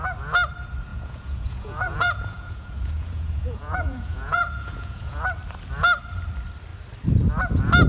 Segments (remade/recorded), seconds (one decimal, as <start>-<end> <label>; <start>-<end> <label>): 0.0-0.9 recorded; 0.9-5.2 remade; 5.2-7.9 recorded